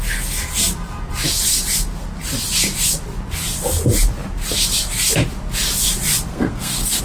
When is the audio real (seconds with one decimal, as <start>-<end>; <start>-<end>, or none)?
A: 0.0-6.3